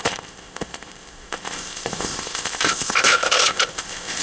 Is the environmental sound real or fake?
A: fake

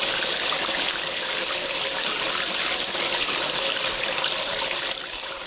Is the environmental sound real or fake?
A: real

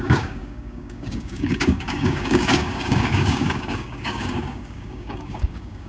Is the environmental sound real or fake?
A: fake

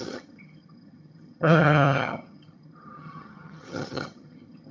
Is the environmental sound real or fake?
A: fake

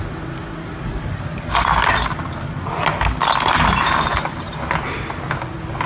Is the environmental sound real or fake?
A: real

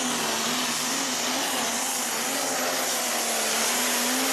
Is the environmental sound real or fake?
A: real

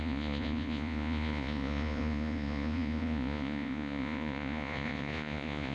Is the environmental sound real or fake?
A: fake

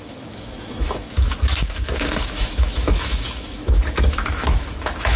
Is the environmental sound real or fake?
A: fake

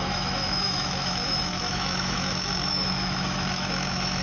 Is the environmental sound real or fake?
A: fake